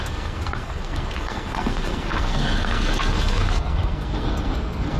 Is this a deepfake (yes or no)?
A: yes